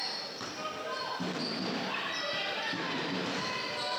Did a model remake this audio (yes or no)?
no